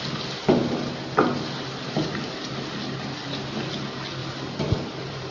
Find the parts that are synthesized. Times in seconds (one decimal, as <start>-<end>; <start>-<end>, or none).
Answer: 4.2-5.3